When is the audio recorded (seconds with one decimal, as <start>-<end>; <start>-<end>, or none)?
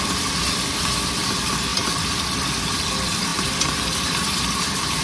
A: 0.0-1.7; 2.2-3.3